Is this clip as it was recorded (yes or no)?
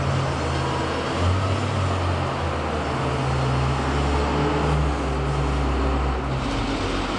yes